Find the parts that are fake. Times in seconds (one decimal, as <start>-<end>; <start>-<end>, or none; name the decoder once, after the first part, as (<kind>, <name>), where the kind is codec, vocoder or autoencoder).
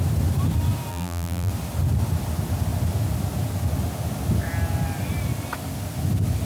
0.9-1.5 (vocoder, BigVGAN v2)